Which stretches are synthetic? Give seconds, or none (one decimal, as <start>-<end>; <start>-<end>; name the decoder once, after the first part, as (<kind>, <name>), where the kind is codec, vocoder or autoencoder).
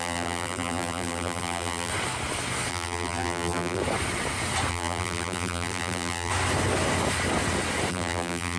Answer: 0.0-1.9 (vocoder, BigVGAN v2); 2.7-3.8; 4.7-6.3; 7.9-8.6